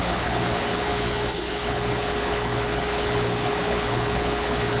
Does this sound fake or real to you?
fake